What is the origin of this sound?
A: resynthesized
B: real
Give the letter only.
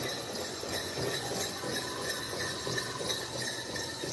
A